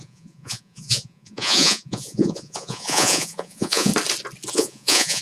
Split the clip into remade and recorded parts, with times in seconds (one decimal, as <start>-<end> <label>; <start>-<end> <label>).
0.0-3.9 remade; 3.9-4.5 recorded; 4.5-5.2 remade